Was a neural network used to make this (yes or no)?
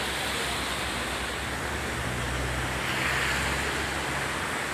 no